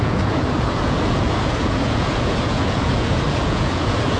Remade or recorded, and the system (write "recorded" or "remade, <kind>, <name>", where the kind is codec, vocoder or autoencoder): remade, vocoder, Vocos